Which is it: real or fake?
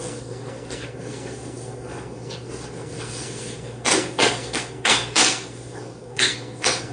fake